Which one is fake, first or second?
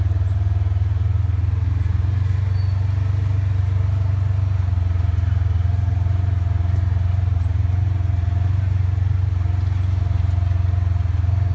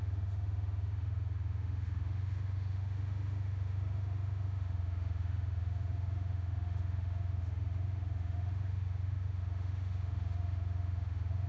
second